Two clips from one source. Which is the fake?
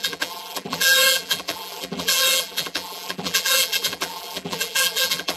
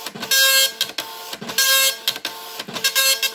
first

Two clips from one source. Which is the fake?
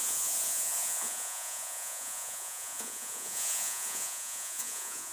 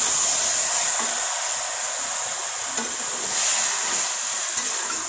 first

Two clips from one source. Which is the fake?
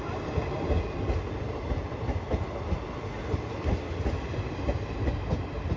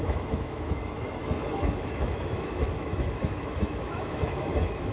second